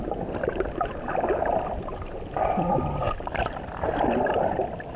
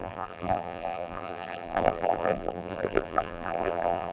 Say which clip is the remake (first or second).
second